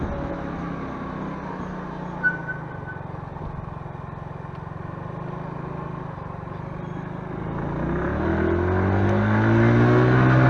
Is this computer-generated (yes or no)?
no